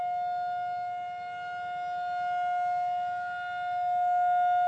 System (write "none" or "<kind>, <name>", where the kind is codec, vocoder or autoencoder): none